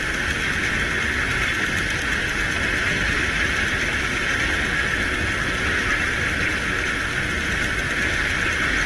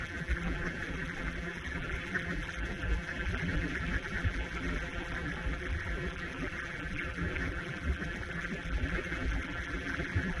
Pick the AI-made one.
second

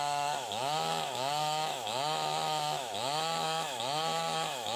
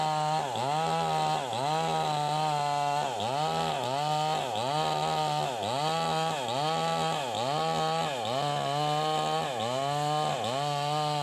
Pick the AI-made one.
first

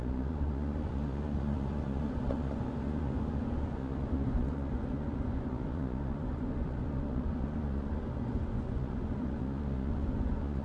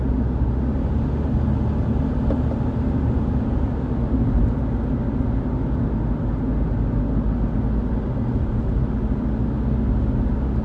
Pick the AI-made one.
first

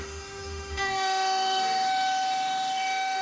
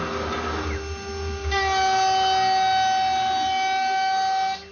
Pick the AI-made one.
first